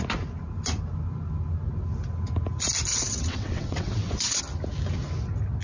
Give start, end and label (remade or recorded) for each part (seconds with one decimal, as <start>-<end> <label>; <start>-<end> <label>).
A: 0.0-2.9 recorded; 2.9-4.4 remade; 4.4-5.6 recorded